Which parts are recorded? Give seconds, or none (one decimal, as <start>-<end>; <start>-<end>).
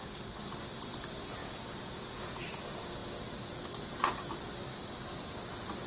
0.0-1.4; 2.6-5.9